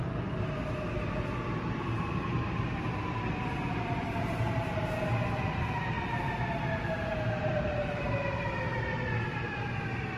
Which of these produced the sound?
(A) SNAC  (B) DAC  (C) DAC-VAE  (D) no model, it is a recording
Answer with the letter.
D